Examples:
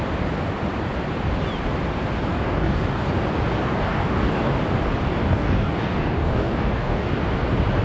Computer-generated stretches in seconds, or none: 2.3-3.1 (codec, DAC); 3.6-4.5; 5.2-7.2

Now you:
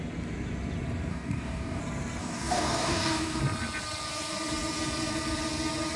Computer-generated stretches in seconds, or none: 1.1-1.8 (codec, DAC); 2.2-3.4

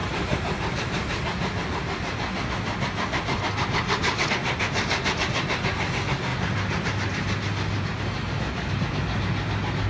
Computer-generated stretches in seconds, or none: none

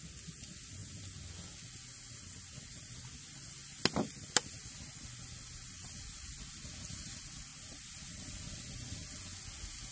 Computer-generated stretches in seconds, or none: none

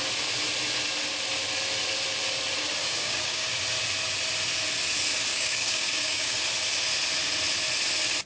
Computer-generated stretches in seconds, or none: 2.8-3.5 (codec, DAC); 5.3-6.4

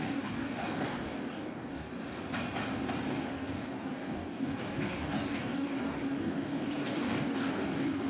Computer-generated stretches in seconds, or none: 0.0-1.9 (codec, DAC); 3.1-8.1

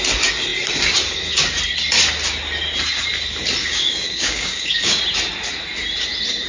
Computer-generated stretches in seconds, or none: 3.6-5.0 (codec, DAC)